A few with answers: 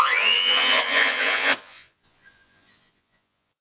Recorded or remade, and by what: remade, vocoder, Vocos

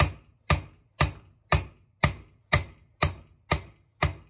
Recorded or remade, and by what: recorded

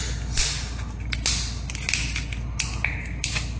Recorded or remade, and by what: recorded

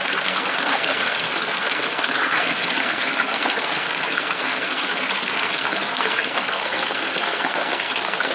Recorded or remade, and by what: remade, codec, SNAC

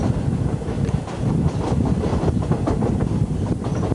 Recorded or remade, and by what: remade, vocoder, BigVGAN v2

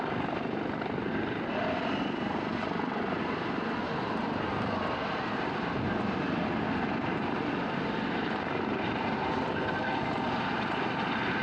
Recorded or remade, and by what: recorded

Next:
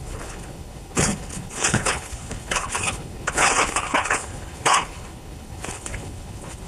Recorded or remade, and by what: remade, codec, HILCodec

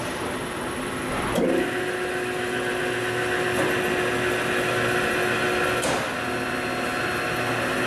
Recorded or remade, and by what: recorded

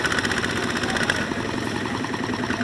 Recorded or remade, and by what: recorded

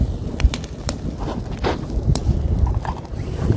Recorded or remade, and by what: remade, vocoder, BigVGAN v2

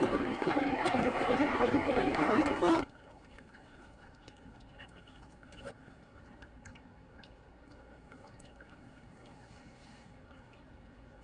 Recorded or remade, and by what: remade, codec, SNAC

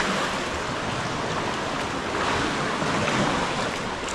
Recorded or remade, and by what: recorded